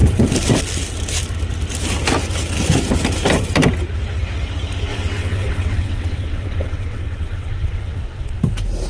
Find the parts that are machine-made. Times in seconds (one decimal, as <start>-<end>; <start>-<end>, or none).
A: 4.9-8.4